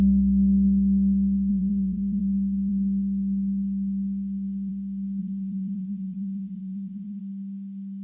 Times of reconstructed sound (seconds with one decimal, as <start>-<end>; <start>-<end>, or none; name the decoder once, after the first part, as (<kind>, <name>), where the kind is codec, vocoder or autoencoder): 1.5-2.2 (vocoder, Vocos); 5.2-7.2